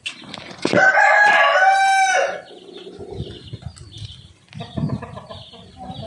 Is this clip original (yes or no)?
yes